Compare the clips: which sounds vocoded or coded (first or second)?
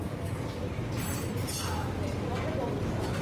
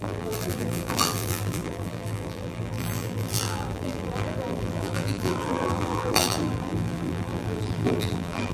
second